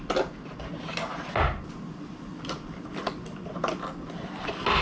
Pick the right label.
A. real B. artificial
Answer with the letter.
A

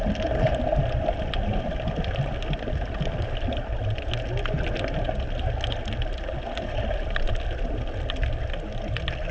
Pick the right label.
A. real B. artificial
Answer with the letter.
A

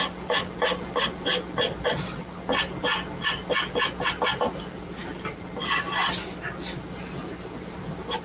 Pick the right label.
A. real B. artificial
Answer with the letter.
A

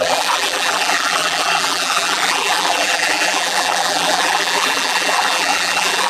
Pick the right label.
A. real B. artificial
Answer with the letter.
B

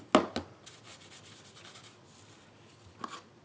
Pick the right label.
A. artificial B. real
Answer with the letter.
B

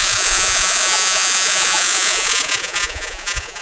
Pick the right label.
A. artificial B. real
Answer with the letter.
A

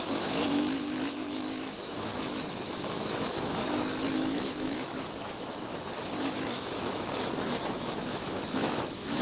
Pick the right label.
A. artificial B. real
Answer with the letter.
A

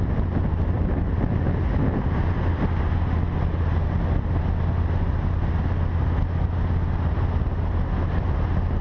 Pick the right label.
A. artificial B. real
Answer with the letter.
B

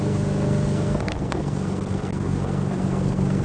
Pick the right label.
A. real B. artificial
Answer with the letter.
B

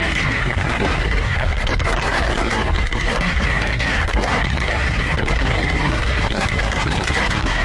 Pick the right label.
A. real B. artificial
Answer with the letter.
B